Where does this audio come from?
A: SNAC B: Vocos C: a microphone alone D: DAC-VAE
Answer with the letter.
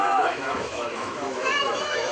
D